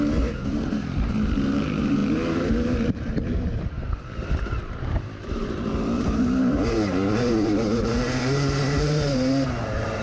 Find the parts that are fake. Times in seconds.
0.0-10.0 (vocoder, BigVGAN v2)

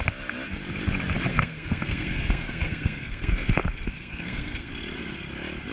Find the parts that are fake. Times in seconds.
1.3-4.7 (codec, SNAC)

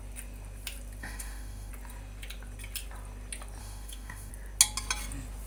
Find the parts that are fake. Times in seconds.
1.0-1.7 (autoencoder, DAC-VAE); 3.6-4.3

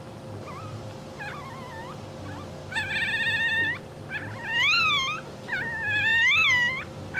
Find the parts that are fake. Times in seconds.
none

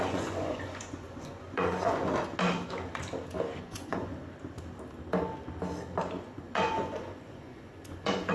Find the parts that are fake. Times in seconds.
0.0-2.0 (vocoder, Vocos); 3.6-4.1; 6.0-8.3

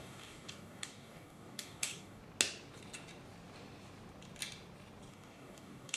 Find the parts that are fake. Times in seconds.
0.0-2.2 (codec, DAC); 5.1-6.0